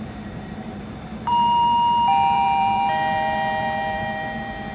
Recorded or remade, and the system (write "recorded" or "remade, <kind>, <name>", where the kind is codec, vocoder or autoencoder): remade, vocoder, BigVGAN v2